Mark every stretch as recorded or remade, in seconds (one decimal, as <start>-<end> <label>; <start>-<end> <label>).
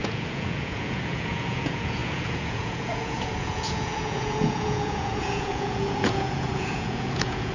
0.0-7.5 remade